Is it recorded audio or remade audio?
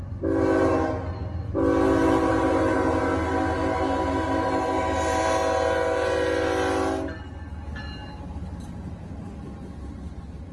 recorded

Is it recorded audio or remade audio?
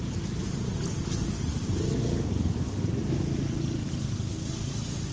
recorded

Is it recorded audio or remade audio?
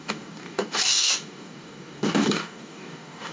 remade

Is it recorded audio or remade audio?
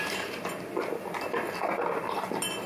recorded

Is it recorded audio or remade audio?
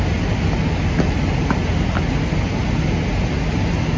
recorded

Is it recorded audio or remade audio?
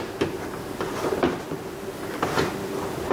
recorded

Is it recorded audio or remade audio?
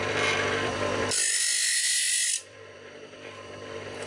remade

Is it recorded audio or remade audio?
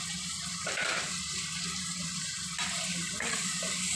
remade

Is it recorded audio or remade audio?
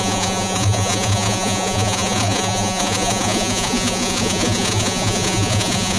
remade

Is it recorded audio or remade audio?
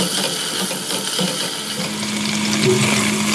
recorded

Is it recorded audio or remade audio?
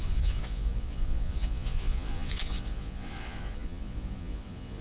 remade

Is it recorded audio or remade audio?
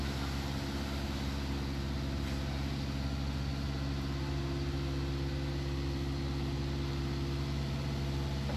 recorded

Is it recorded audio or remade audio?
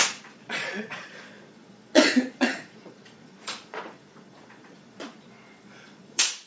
remade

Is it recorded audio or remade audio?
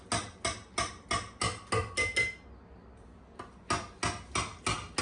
recorded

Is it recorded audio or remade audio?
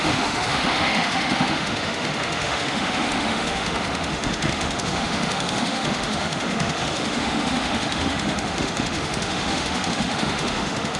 remade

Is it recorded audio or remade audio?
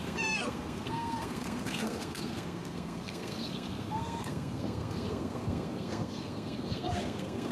remade